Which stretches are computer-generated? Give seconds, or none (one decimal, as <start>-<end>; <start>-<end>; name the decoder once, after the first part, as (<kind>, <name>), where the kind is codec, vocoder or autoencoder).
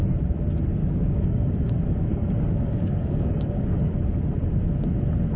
0.8-1.7 (codec, DAC); 2.1-3.9